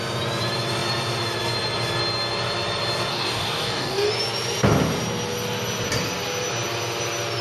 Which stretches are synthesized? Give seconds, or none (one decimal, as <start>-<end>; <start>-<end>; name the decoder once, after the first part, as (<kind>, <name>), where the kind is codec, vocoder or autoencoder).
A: 3.1-4.1 (codec, DAC)